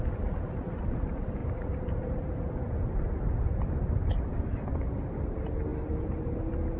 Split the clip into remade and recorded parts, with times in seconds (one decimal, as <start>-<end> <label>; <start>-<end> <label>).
0.0-6.8 recorded